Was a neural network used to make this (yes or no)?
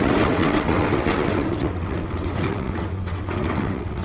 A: yes